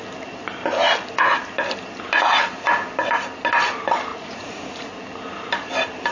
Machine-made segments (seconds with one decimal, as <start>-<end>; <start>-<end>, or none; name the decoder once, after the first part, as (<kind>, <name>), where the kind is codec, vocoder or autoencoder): 4.1-4.9 (vocoder, Vocos)